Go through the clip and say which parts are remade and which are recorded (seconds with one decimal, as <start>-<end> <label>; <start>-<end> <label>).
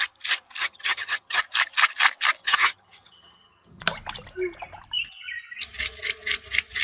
0.0-0.6 recorded; 0.6-1.4 remade; 1.4-2.4 recorded; 2.4-3.8 remade; 3.8-6.8 recorded